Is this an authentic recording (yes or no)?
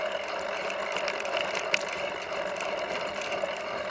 yes